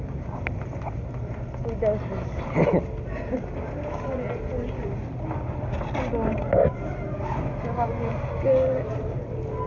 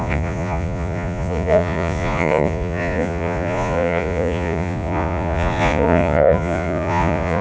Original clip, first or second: first